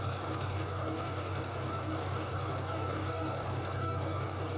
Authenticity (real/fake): fake